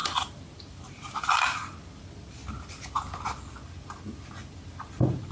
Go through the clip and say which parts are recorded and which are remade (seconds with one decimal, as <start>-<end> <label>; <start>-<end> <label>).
0.0-2.4 remade; 2.4-3.6 recorded; 3.6-5.3 remade